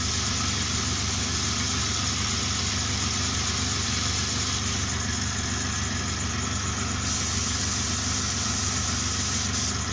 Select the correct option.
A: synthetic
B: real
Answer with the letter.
B